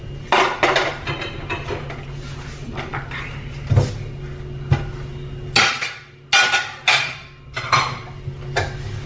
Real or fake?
real